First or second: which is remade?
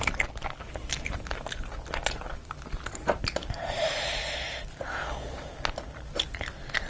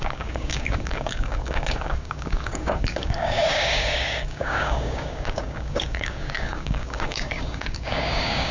second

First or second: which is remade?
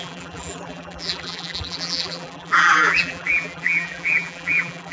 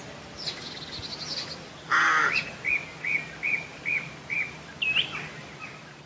first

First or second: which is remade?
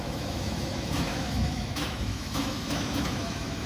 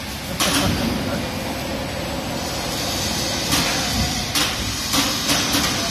first